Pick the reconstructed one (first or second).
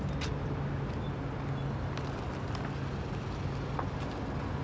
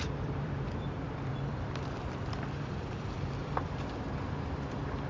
second